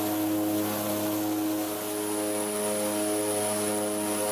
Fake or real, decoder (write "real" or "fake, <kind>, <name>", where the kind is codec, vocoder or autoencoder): real